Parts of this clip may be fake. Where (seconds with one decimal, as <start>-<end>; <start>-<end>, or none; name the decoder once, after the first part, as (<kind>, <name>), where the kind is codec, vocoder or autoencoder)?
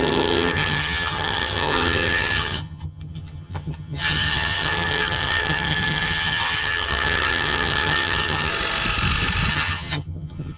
0.0-8.5 (vocoder, HiFi-GAN); 9.5-10.6